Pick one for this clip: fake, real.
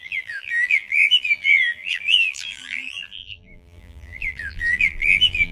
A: fake